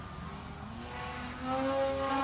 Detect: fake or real real